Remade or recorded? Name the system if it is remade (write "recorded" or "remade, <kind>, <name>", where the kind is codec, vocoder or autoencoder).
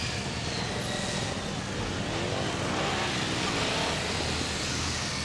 recorded